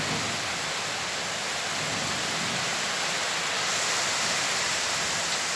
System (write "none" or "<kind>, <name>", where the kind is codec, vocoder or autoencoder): none